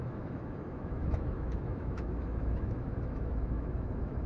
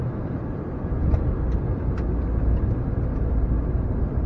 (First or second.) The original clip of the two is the second